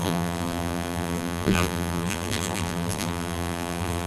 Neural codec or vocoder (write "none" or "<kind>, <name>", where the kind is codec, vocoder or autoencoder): vocoder, BigVGAN v2